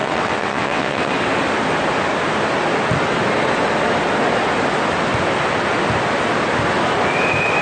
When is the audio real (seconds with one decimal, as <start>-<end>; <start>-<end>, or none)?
1.1-7.6